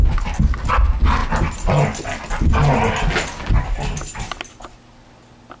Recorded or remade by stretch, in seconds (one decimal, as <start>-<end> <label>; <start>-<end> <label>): 0.0-5.6 recorded